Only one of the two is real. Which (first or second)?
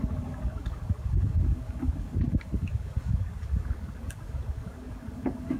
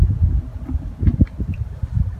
second